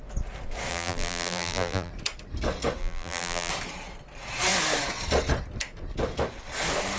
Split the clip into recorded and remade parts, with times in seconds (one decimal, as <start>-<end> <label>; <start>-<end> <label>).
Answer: 0.0-0.7 recorded; 0.7-1.9 remade; 1.9-2.8 recorded; 2.8-3.5 remade; 3.5-7.0 recorded